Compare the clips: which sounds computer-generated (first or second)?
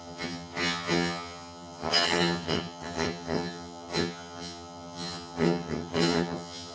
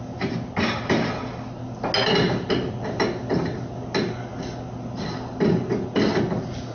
first